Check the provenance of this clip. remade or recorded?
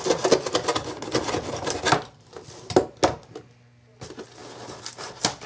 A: recorded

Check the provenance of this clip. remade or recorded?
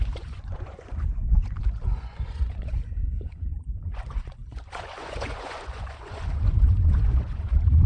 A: remade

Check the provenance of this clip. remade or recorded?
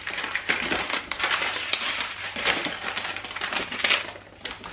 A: recorded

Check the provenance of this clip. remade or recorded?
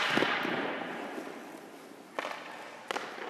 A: recorded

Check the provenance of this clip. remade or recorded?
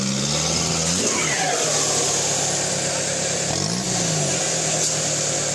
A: recorded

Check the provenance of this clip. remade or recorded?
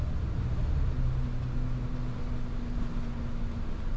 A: recorded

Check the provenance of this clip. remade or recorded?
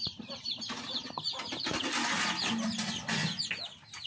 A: recorded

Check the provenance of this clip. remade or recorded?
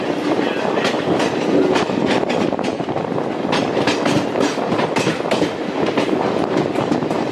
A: recorded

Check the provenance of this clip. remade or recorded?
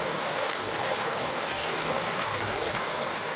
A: remade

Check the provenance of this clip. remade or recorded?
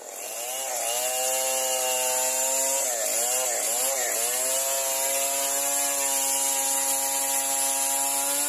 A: recorded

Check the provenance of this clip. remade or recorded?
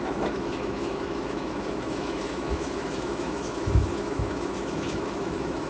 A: remade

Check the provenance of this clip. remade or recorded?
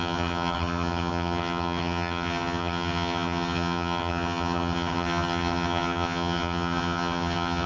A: remade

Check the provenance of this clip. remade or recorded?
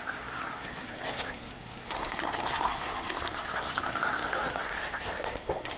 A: remade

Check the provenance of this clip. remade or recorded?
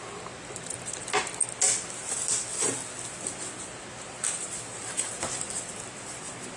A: recorded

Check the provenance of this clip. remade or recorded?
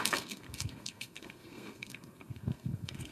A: remade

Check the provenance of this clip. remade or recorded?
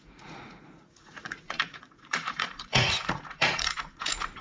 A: remade